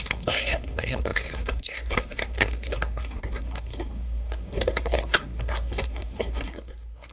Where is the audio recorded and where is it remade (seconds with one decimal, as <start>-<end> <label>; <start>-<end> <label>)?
0.0-7.1 remade